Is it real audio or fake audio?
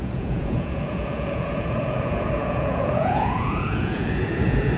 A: fake